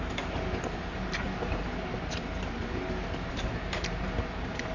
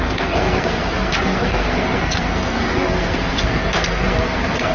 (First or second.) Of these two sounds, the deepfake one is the second